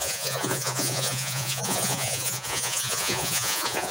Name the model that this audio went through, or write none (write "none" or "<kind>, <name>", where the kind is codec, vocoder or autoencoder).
vocoder, Vocos